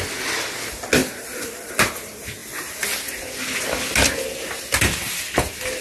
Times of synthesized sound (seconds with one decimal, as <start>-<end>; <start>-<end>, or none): none